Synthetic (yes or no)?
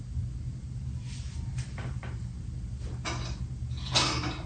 no